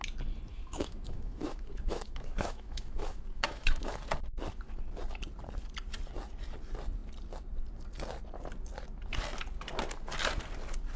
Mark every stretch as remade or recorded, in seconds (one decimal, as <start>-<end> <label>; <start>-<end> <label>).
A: 0.0-0.5 recorded; 0.5-4.0 remade; 4.0-11.0 recorded